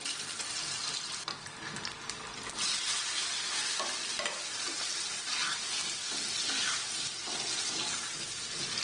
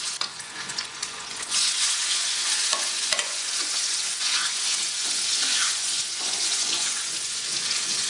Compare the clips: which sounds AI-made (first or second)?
second